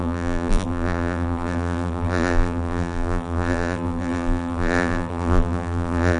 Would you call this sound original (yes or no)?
no